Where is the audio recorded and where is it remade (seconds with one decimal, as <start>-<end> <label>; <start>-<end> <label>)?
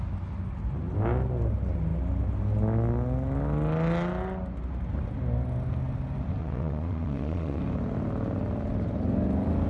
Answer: 0.0-6.4 recorded; 6.4-7.6 remade; 7.6-9.7 recorded